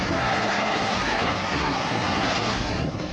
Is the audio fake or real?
fake